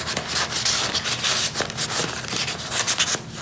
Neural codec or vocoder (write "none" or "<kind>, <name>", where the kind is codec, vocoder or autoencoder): none